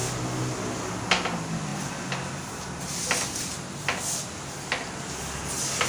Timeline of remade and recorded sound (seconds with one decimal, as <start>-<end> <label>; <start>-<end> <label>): 0.0-5.9 recorded